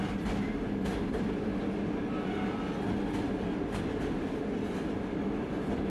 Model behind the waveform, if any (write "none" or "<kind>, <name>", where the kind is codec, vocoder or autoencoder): none